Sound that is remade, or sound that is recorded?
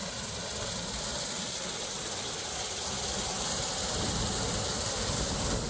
recorded